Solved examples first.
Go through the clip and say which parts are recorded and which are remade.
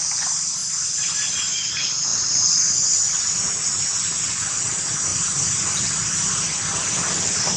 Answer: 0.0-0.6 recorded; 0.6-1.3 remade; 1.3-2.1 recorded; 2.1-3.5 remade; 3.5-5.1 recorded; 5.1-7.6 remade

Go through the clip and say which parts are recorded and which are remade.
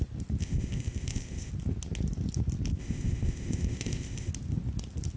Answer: 0.0-0.4 recorded; 0.4-1.5 remade; 1.5-2.8 recorded; 2.8-4.3 remade; 4.3-5.2 recorded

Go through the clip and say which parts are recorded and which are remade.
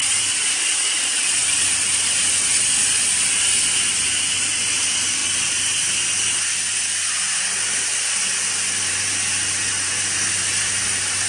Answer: 0.0-1.4 recorded; 1.4-2.1 remade; 2.1-11.3 recorded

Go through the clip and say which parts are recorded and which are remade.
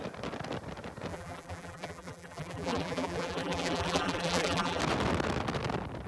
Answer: 0.0-1.1 recorded; 1.1-4.8 remade; 4.8-6.1 recorded